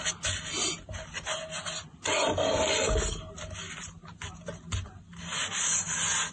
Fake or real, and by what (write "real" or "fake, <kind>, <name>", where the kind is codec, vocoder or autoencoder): real